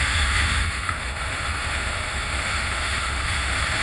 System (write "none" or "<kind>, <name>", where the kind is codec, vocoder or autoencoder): autoencoder, DAC-VAE